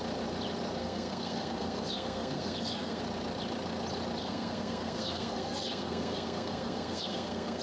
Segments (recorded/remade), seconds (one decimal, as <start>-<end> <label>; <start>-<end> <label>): 0.0-0.8 recorded; 0.8-3.0 remade; 3.0-4.2 recorded; 4.2-7.6 remade